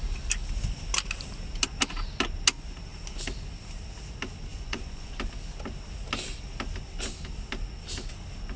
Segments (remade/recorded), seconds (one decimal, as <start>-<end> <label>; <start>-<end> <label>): 0.0-4.5 recorded; 4.5-5.2 remade; 5.2-8.6 recorded